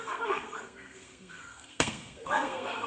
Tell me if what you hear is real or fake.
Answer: fake